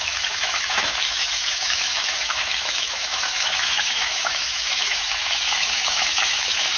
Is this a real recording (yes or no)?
no